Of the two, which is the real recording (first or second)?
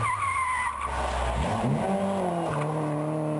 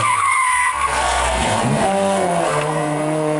first